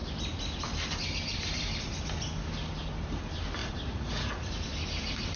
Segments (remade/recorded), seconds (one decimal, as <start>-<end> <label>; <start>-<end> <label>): 0.0-3.6 recorded; 3.6-4.5 remade; 4.5-5.4 recorded

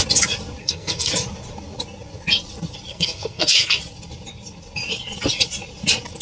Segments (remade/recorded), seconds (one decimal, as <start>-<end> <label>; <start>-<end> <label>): 0.0-0.6 recorded; 0.6-1.1 remade; 1.1-2.9 recorded; 2.9-3.8 remade; 3.8-6.2 recorded

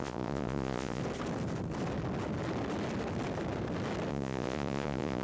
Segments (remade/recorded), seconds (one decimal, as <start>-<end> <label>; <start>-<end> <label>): 0.0-1.0 remade; 1.0-4.1 recorded; 4.1-5.2 remade

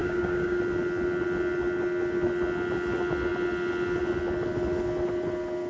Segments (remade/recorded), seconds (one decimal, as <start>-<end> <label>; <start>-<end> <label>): 0.0-0.6 remade; 0.6-5.7 recorded

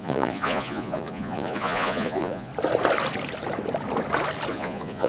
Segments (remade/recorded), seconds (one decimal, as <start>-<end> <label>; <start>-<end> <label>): 0.0-2.5 remade; 2.5-4.5 recorded; 4.5-5.1 remade

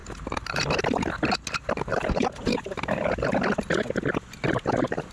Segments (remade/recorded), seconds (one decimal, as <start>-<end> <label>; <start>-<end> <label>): 0.0-0.8 remade; 0.8-1.9 recorded; 1.9-3.3 remade; 3.3-5.1 recorded

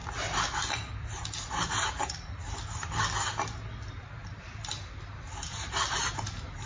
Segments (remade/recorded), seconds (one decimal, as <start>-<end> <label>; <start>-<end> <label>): 0.0-1.5 recorded; 1.5-2.4 remade; 2.4-5.0 recorded; 5.0-6.7 remade